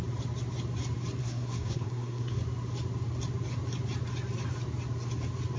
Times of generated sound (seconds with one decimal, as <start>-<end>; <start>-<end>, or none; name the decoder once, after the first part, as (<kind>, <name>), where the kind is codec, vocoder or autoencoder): 1.2-2.4 (codec, SNAC)